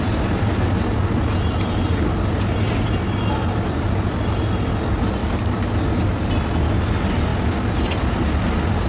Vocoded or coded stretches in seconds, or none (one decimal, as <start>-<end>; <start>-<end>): 5.2-5.7